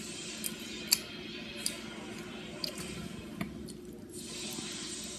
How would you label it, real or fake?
real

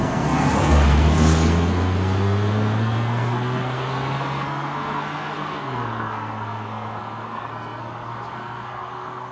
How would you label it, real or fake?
fake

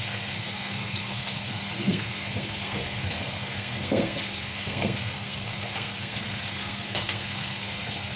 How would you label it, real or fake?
fake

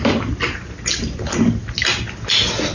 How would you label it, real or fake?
real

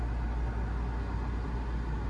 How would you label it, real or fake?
real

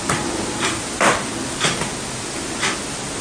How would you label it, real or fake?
real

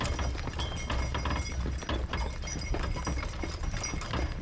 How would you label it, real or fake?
real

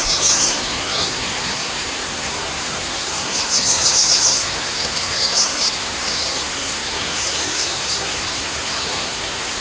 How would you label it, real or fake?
fake